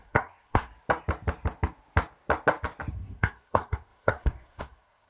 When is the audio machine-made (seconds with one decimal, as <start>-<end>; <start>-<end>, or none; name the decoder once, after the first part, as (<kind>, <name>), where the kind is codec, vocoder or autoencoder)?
0.0-0.7 (codec, SNAC); 2.9-5.1